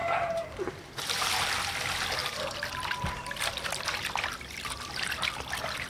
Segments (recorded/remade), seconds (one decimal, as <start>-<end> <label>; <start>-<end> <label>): 0.0-0.7 recorded; 0.7-5.9 remade